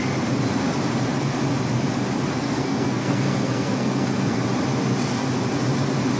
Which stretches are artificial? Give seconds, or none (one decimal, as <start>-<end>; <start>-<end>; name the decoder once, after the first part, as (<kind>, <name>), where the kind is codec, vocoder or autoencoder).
2.4-4.4 (codec, SNAC)